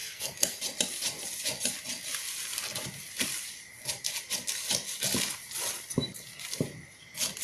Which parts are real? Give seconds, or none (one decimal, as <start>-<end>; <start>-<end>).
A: 0.6-7.4